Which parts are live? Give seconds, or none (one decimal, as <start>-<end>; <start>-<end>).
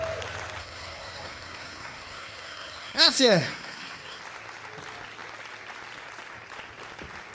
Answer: 0.0-0.6; 4.2-7.3